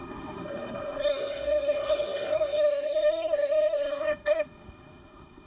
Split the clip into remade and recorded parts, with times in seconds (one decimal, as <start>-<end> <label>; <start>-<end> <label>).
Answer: 0.0-5.5 remade